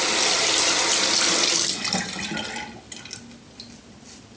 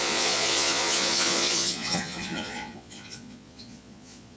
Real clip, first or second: first